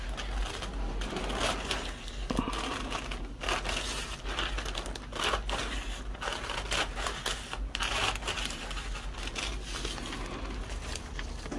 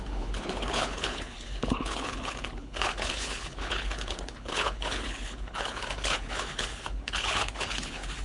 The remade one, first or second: second